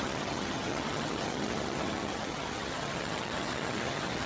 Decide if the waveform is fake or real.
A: fake